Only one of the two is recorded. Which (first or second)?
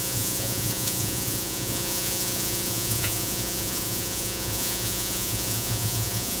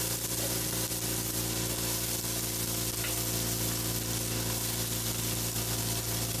second